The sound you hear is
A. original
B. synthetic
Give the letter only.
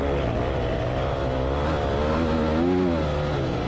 A